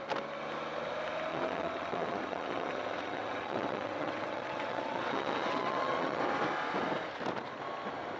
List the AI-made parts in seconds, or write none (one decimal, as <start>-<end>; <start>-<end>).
1.3-6.2